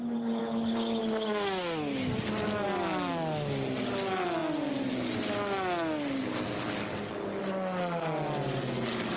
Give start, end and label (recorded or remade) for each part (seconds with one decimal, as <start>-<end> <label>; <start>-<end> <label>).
0.0-9.2 recorded